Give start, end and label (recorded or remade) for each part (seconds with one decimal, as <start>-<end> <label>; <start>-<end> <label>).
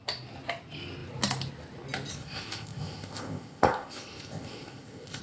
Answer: 0.0-2.1 recorded; 2.1-5.2 remade